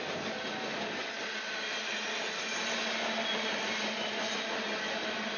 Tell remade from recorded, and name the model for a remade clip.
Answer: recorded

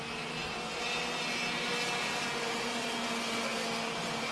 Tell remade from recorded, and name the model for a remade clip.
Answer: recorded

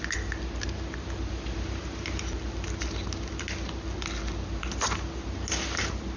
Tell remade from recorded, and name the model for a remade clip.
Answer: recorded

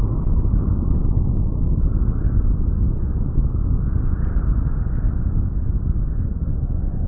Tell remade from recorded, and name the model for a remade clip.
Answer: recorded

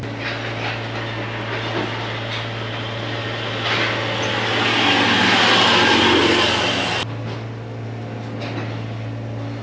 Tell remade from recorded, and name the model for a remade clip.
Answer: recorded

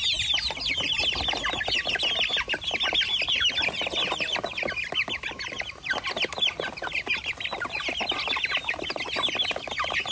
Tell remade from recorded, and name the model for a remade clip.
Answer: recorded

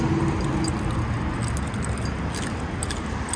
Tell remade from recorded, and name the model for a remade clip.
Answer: recorded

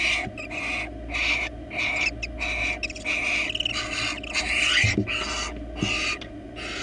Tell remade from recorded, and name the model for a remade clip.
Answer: recorded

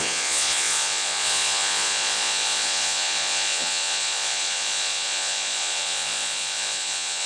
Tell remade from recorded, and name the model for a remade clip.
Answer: remade, vocoder, Vocos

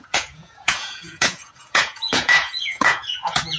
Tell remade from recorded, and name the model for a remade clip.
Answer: remade, vocoder, Vocos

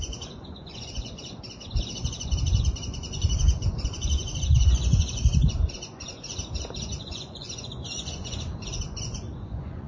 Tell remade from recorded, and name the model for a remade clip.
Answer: remade, vocoder, Vocos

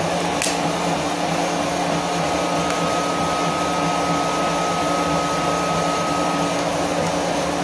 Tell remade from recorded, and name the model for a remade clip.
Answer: recorded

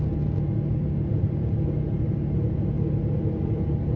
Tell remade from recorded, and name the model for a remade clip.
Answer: recorded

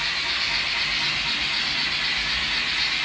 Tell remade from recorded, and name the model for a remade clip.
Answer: recorded